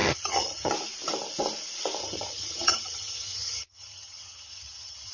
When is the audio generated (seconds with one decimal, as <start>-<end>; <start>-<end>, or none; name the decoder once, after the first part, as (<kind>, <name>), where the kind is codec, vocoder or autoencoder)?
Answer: 0.0-0.7 (vocoder, HiFi-GAN); 2.0-5.1